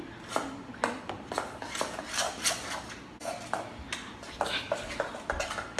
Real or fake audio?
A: real